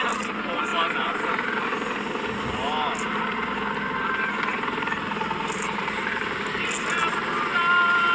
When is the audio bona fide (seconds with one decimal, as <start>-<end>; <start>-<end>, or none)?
0.0-0.7; 3.2-4.5; 6.5-8.1